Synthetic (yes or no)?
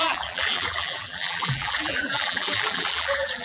yes